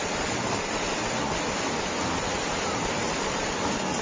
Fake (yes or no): no